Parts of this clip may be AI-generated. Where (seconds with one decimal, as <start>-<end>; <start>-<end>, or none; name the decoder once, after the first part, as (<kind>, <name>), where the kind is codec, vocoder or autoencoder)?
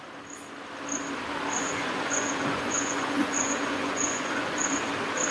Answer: 1.6-4.8 (vocoder, Vocos)